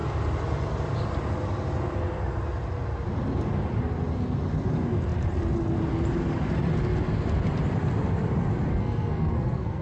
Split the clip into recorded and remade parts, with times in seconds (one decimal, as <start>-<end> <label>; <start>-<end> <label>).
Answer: 0.0-8.7 recorded; 8.7-9.8 remade